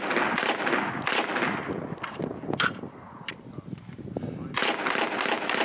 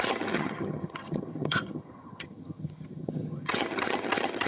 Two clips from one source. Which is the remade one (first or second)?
second